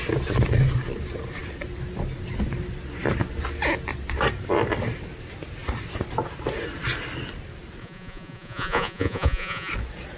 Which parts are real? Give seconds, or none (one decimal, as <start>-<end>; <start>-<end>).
0.0-7.8; 9.7-10.2